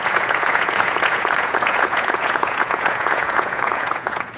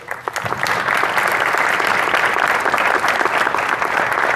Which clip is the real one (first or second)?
second